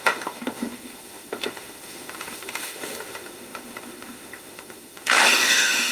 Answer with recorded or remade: remade